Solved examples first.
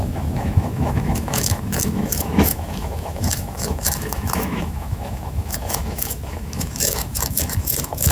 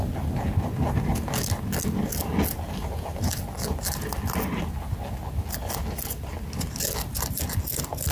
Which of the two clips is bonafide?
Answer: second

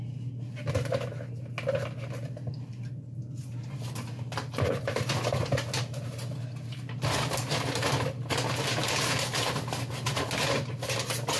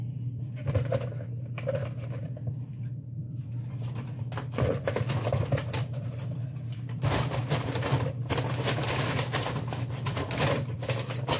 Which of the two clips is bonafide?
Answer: first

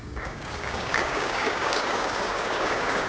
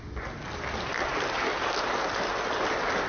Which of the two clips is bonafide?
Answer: second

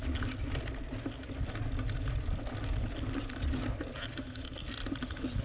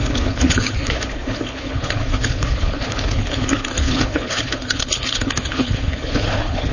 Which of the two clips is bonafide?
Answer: first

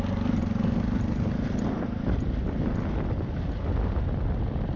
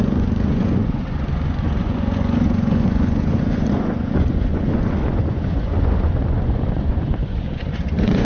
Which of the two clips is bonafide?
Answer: first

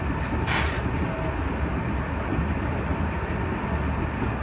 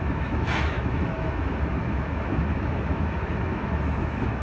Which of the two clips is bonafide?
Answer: first